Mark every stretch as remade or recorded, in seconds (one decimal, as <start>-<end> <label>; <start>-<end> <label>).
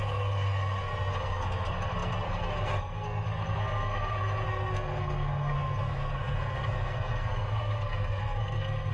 0.0-8.9 remade